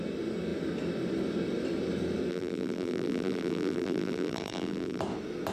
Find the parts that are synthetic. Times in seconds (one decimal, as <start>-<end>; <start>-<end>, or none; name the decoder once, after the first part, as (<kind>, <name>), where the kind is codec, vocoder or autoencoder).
2.3-5.0 (vocoder, BigVGAN v2)